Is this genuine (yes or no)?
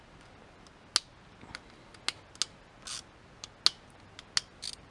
yes